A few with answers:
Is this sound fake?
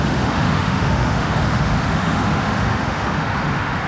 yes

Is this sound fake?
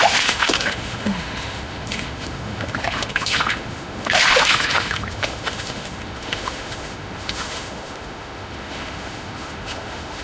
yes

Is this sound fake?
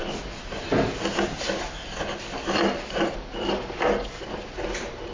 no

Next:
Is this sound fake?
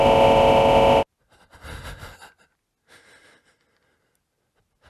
no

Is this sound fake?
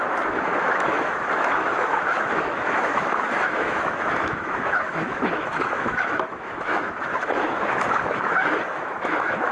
yes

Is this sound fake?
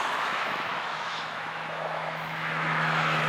yes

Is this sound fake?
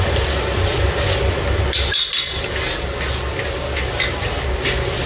no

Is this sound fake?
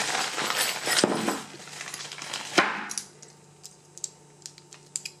no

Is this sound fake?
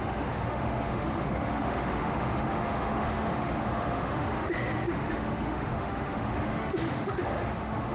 yes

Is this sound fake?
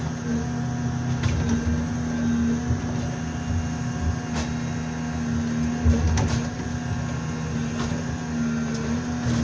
no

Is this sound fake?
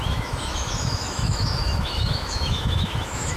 yes